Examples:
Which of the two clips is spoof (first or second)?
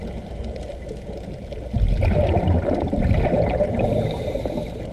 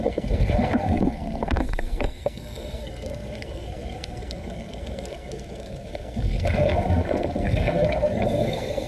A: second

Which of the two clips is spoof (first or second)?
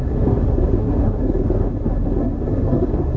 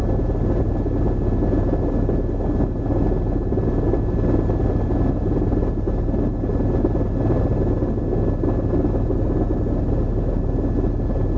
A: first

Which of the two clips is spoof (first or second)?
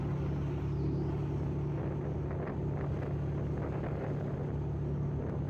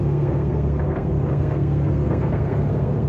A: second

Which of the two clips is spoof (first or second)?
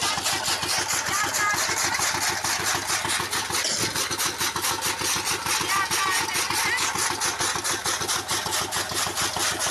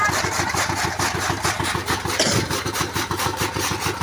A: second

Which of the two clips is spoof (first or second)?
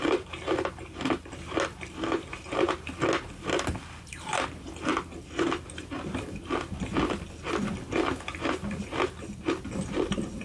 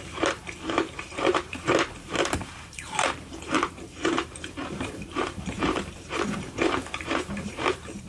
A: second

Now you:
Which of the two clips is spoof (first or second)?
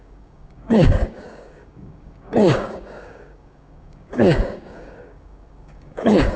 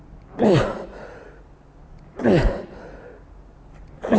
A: first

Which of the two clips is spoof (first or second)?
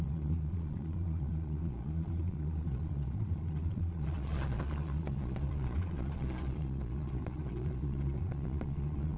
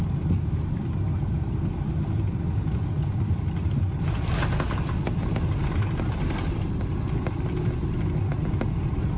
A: first